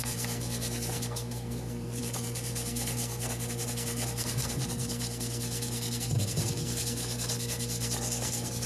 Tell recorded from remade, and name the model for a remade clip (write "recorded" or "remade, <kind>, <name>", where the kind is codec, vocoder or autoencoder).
remade, codec, SNAC